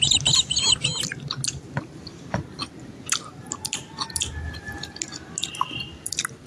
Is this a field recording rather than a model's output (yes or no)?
yes